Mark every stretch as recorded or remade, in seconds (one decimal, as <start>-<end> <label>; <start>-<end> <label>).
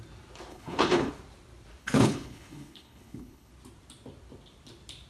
0.0-0.5 recorded; 0.5-1.1 remade; 1.1-1.8 recorded; 1.8-3.5 remade; 3.5-5.1 recorded